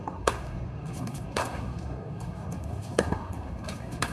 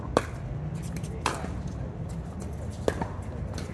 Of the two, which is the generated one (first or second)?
first